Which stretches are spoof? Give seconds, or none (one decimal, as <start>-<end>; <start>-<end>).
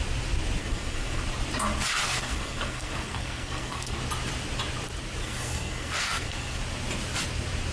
0.6-1.2; 2.0-4.0; 5.2-6.6